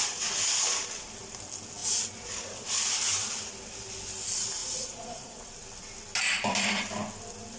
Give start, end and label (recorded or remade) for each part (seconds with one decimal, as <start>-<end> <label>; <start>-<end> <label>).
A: 0.0-4.6 recorded; 4.6-5.5 remade; 5.5-7.6 recorded